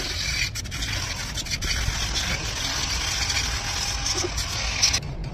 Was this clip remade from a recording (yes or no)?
no